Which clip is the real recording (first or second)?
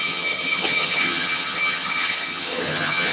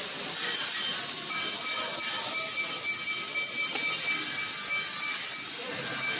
second